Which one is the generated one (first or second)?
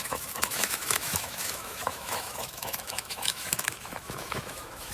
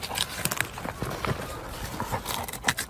first